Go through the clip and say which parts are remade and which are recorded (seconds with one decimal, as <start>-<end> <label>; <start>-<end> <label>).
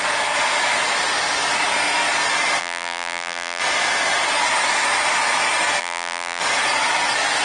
0.0-2.6 recorded; 2.6-3.6 remade; 3.6-5.8 recorded; 5.8-6.4 remade; 6.4-7.4 recorded